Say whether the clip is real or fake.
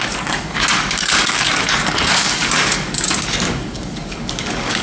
fake